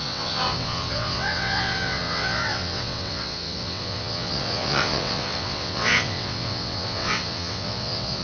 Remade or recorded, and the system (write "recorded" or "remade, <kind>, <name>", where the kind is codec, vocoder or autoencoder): remade, vocoder, WaveNeXt